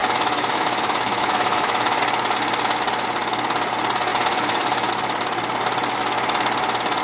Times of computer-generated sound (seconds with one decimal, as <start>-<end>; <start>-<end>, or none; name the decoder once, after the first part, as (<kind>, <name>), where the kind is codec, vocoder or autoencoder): 0.0-2.0 (autoencoder, DAC-VAE); 4.1-4.9